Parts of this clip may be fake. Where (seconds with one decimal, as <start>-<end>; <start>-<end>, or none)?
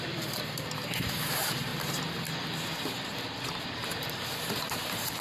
0.0-1.7; 3.6-5.2